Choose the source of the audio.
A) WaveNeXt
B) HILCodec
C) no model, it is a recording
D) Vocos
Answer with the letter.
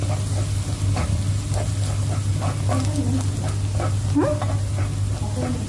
C